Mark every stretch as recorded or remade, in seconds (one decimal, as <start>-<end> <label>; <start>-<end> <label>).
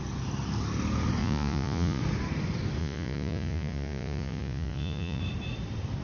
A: 0.0-1.2 recorded; 1.2-2.0 remade; 2.0-2.8 recorded; 2.8-5.2 remade; 5.2-6.0 recorded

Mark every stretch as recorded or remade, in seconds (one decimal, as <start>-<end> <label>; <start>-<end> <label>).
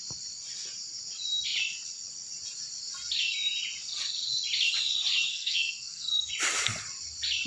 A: 0.0-5.3 recorded; 5.3-6.3 remade; 6.3-7.5 recorded